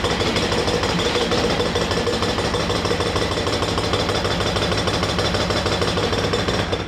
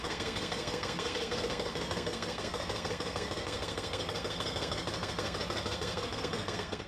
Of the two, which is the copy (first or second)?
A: second